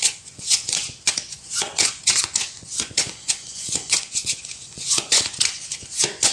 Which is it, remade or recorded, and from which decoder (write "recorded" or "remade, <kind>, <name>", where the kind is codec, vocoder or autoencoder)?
remade, vocoder, Vocos